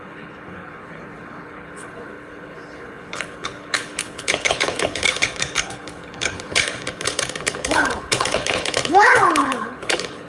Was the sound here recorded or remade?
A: remade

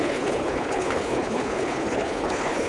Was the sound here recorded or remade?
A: remade